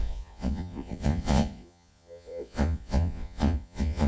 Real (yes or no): no